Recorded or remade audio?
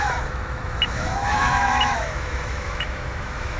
remade